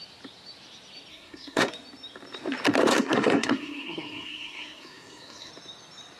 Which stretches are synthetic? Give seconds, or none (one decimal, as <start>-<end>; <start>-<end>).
1.1-1.7; 2.9-5.5